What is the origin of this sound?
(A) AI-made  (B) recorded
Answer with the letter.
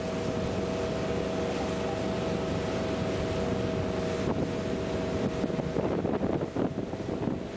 B